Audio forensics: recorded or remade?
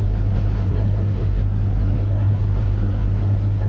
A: remade